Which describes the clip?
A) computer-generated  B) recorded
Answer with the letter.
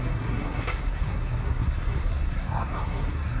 A